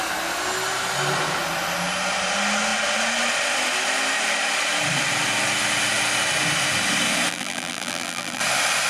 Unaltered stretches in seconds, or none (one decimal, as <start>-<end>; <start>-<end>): 0.0-7.3; 8.4-8.9